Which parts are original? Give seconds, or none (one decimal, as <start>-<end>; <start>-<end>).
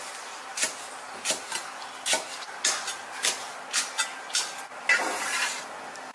0.0-6.1